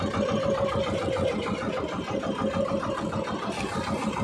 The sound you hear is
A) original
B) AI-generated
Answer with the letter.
A